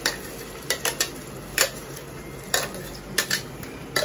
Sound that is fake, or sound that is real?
real